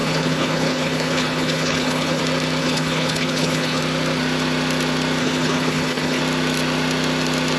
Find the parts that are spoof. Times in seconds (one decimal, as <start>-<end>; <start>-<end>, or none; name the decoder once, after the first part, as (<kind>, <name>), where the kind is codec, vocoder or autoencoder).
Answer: 0.0-2.2 (codec, HILCodec); 2.6-3.8; 5.2-6.2